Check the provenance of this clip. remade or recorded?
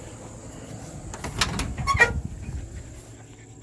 recorded